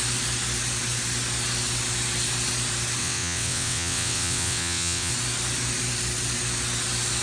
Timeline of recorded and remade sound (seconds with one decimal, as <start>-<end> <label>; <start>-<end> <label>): 0.0-3.0 recorded; 3.0-5.1 remade; 5.1-7.2 recorded